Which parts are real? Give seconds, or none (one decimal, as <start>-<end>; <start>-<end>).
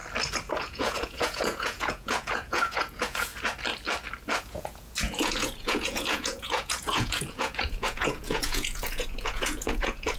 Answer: 0.0-0.6; 3.3-4.4